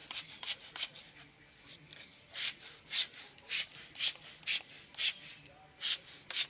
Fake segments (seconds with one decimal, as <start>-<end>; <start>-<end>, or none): 2.1-4.4